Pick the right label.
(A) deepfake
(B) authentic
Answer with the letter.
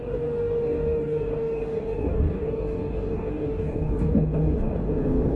A